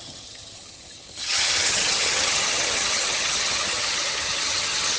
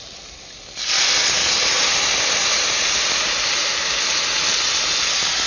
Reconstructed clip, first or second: first